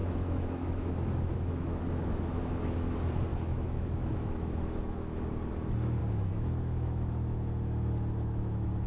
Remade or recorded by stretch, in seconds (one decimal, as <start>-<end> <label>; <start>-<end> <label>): 0.0-2.7 remade; 2.7-3.3 recorded; 3.3-5.3 remade; 5.3-6.0 recorded; 6.0-8.9 remade